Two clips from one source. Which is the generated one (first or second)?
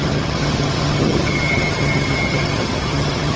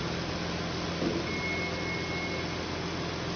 first